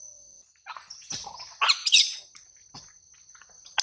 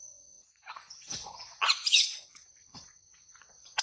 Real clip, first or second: first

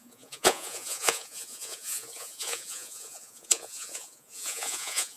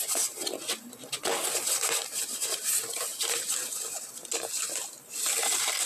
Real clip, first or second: second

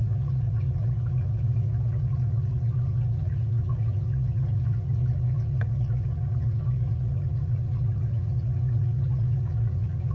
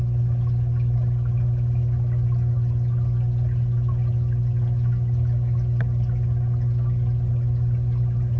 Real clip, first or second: second